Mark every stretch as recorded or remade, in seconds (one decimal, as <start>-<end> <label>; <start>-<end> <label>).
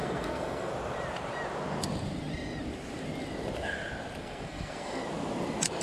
0.0-0.7 remade; 0.7-4.2 recorded; 4.2-5.0 remade; 5.0-5.8 recorded